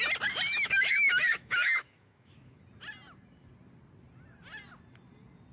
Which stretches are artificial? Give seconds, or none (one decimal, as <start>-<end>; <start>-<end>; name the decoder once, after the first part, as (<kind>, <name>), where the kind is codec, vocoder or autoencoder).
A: 0.5-2.6 (autoencoder, DAC-VAE)